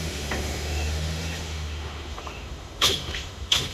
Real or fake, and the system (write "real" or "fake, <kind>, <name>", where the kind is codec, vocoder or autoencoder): fake, autoencoder, DAC-VAE